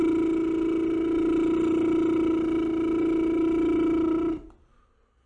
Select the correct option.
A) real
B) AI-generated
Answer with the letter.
A